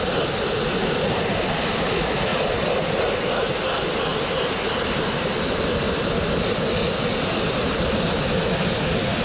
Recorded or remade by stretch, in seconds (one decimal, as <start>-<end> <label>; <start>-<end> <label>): 0.0-9.2 recorded